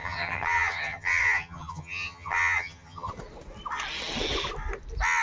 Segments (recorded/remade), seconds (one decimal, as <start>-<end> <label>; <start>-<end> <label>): 0.0-3.1 remade; 3.1-5.2 recorded